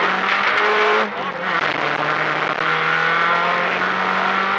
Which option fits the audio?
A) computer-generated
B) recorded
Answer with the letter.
B